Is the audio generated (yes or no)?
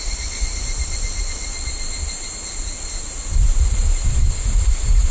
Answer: no